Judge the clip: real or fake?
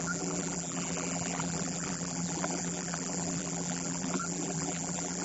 fake